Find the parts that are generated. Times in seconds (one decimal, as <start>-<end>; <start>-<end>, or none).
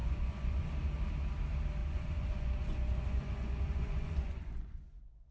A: 0.0-0.7; 1.8-5.3